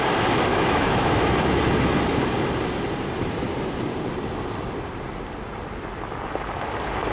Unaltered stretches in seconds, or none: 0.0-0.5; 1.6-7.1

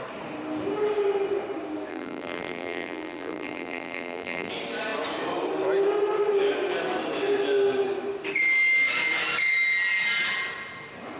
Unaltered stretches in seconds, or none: 0.0-1.9; 4.5-11.2

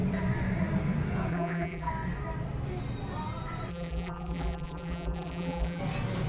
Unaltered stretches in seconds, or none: 0.0-1.3; 1.9-3.7; 5.8-6.3

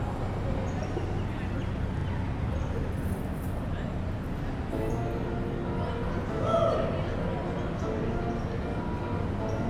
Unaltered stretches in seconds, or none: 0.0-9.7